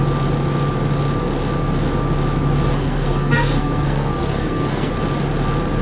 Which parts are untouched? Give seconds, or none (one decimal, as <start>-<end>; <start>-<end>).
0.0-2.7; 4.9-5.8